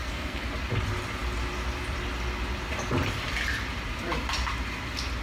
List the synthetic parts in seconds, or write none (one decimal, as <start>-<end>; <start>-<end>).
0.0-0.5